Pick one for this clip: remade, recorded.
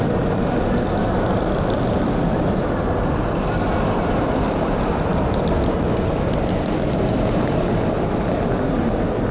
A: recorded